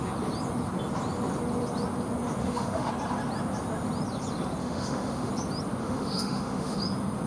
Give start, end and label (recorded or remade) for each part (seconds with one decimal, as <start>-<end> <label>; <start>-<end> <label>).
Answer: 0.0-2.4 recorded; 2.4-2.9 remade; 2.9-4.6 recorded; 4.6-5.3 remade; 5.3-5.8 recorded; 5.8-6.8 remade; 6.8-7.3 recorded